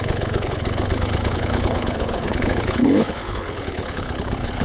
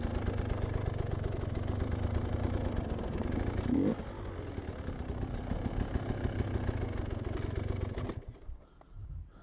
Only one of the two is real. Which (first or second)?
second